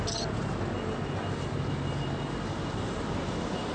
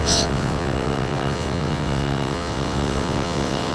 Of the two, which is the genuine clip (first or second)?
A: first